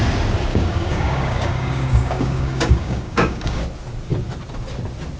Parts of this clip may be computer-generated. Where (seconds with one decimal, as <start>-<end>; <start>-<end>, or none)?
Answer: 0.5-3.6